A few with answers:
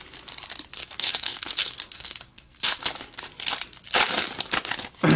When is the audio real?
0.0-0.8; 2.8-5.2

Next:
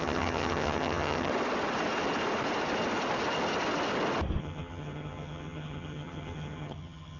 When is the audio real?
1.3-4.4

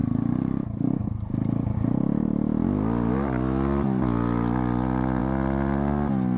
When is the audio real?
1.0-6.4